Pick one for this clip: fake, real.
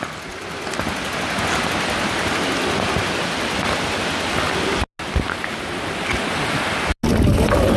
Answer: real